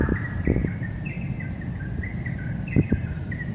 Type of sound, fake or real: real